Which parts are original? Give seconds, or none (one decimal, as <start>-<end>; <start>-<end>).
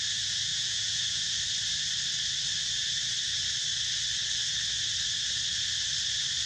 0.0-0.5; 1.2-6.5